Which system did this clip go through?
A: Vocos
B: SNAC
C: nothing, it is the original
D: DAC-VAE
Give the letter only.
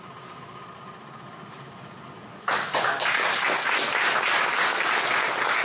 C